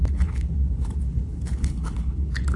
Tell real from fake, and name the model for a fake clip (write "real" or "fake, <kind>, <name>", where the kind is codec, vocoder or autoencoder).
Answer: fake, codec, HILCodec